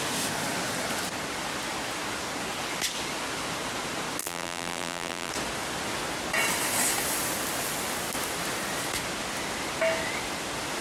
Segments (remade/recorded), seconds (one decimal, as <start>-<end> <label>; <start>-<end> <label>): 0.0-4.2 recorded; 4.2-5.3 remade; 5.3-10.8 recorded